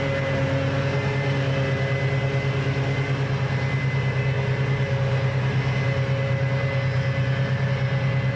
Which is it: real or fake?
real